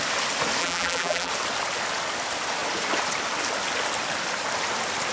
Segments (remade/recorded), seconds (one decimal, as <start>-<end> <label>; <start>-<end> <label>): 0.0-0.6 recorded; 0.6-1.3 remade; 1.3-5.1 recorded